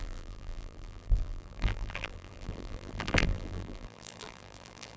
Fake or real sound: fake